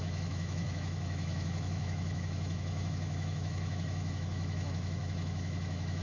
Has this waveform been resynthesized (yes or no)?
yes